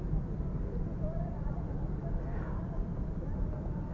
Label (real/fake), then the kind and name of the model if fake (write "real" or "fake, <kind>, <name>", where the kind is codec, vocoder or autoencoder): real